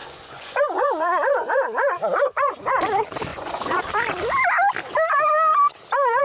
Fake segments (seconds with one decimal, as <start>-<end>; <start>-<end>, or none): 0.0-2.7; 3.3-3.8